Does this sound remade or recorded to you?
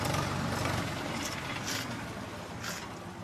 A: recorded